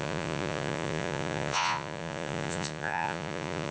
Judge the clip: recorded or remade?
remade